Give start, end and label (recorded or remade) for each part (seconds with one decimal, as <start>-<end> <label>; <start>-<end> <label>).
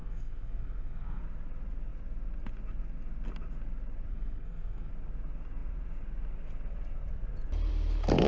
0.0-1.2 remade; 1.2-4.1 recorded; 4.1-4.9 remade; 4.9-8.3 recorded